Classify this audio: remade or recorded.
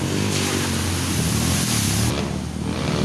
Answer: recorded